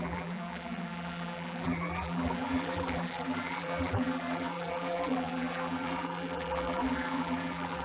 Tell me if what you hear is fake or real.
fake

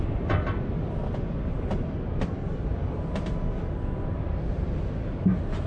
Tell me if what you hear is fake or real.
real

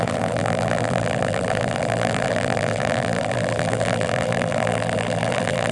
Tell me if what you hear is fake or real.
fake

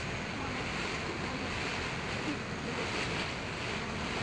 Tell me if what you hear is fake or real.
real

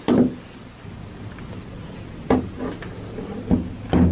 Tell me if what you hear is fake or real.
real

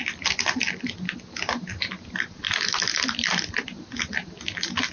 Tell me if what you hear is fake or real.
real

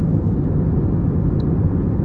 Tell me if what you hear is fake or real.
real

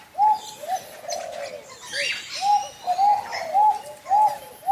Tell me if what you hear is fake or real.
real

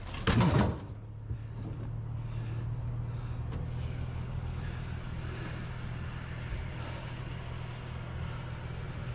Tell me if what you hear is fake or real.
real